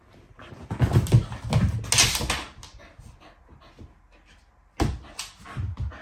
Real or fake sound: real